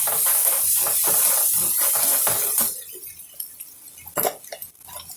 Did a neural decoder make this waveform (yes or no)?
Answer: no